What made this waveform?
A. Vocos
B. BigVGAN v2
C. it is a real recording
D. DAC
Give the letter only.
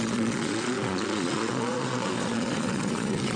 A